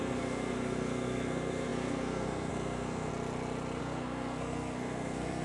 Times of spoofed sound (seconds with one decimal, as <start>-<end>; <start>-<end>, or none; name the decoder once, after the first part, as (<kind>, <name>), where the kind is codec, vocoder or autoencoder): 0.0-3.1 (codec, SNAC); 3.8-5.4

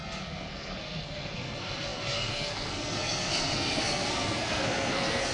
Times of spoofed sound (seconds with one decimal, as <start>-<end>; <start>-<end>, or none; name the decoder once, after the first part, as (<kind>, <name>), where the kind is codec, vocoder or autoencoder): 0.0-5.3 (codec, SNAC)

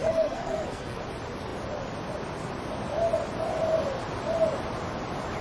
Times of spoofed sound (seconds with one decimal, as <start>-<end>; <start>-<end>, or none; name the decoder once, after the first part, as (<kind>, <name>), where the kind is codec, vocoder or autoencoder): 0.0-1.0 (codec, SNAC)

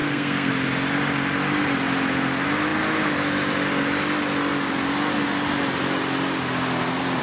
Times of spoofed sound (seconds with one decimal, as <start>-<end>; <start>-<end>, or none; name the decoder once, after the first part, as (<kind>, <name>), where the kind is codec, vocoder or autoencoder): 0.0-0.5 (codec, SNAC)

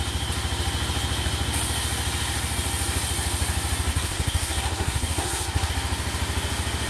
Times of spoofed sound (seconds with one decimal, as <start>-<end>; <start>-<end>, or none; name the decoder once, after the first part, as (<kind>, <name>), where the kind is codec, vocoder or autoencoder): 3.9-5.7 (codec, SNAC)

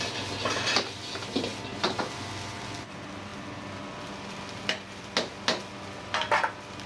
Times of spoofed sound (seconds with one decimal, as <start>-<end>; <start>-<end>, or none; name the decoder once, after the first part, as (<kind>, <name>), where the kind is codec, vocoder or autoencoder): none

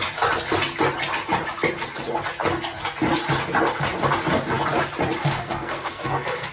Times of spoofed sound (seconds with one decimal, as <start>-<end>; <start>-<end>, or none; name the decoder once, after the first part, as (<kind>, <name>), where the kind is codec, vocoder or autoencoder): 5.2-6.5 (codec, SNAC)